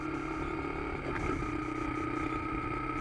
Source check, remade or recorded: recorded